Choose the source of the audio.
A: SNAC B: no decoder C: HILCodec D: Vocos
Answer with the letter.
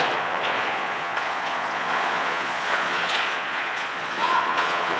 D